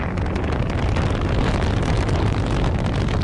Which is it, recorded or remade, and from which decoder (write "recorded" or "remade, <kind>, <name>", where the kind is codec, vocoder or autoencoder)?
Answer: recorded